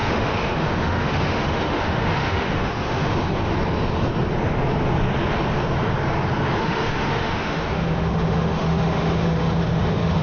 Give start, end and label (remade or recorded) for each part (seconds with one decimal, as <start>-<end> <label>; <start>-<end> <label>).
0.0-3.5 remade; 3.5-6.6 recorded; 6.6-10.2 remade